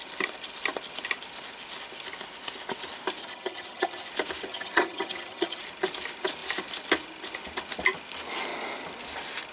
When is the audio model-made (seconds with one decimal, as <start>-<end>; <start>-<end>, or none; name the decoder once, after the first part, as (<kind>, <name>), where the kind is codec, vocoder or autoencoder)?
3.2-4.1 (vocoder, HiFi-GAN); 4.5-5.6